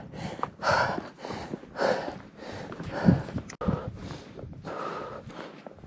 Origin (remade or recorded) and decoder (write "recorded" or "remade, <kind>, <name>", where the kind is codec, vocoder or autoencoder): recorded